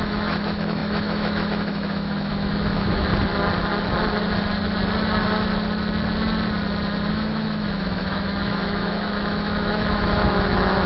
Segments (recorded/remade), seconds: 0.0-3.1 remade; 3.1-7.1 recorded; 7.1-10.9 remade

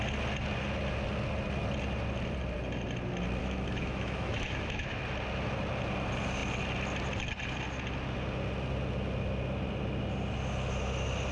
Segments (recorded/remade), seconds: 0.0-3.4 recorded; 3.4-5.0 remade; 5.0-11.3 recorded

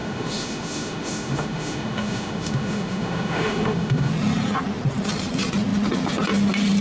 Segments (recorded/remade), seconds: 0.0-4.1 remade; 4.1-6.8 recorded

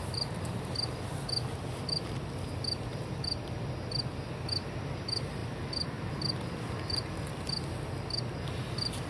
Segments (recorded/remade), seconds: 0.0-9.1 recorded

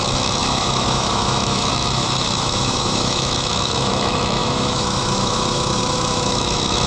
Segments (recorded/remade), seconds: 0.0-6.9 remade

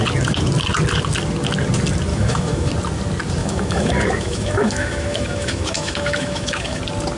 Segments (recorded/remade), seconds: 0.0-2.1 recorded; 2.1-2.7 remade; 2.7-3.4 recorded; 3.4-6.8 remade; 6.8-7.2 recorded

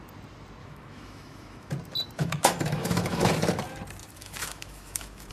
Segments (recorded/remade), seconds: 0.0-0.6 recorded; 0.6-1.7 remade; 1.7-2.2 recorded; 2.2-3.3 remade; 3.3-4.0 recorded; 4.0-5.3 remade

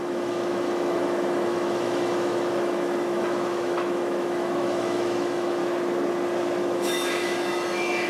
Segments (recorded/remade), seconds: 0.0-5.6 remade; 5.6-6.6 recorded; 6.6-8.1 remade